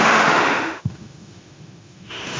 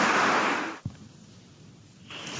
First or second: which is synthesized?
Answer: first